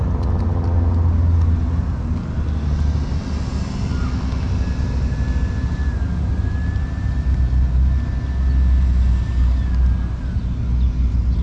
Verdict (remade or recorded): recorded